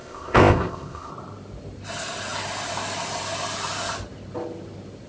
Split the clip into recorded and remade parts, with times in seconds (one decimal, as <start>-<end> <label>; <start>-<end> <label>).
0.0-1.1 remade; 1.1-5.1 recorded